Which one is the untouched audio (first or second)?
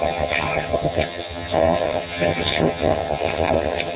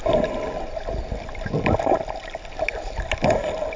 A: second